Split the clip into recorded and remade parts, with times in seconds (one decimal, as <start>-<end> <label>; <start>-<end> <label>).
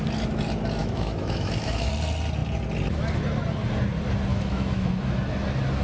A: 0.0-0.8 recorded; 0.8-1.9 remade; 1.9-4.3 recorded; 4.3-4.9 remade; 4.9-5.8 recorded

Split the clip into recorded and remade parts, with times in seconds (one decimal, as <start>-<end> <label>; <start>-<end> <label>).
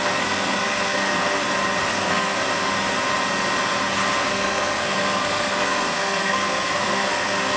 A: 0.0-1.4 remade; 1.4-1.9 recorded; 1.9-2.4 remade; 2.4-4.3 recorded; 4.3-7.6 remade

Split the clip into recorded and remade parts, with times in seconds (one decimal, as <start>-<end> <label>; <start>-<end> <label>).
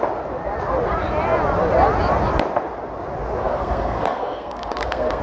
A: 0.0-3.4 recorded; 3.4-5.2 remade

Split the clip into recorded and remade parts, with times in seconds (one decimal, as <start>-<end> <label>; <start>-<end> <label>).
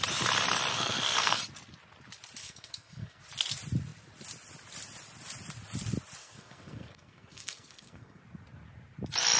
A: 0.0-0.7 recorded; 0.7-1.4 remade; 1.4-2.4 recorded; 2.4-3.2 remade; 3.2-6.2 recorded; 6.2-8.2 remade; 8.2-9.4 recorded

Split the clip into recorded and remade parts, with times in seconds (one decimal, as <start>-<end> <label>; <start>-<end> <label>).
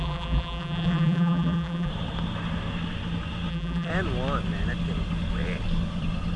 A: 0.0-1.9 remade; 1.9-3.5 recorded; 3.5-3.9 remade; 3.9-6.4 recorded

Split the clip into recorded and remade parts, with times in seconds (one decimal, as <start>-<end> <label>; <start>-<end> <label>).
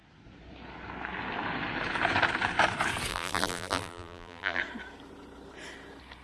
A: 0.0-3.1 recorded; 3.1-4.6 remade; 4.6-6.2 recorded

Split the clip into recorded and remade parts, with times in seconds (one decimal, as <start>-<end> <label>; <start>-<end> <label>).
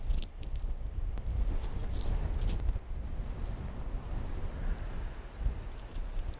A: 0.0-6.4 recorded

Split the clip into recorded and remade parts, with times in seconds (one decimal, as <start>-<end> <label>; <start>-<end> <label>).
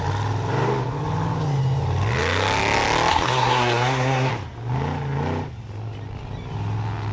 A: 0.0-3.1 recorded; 3.1-4.3 remade; 4.3-7.1 recorded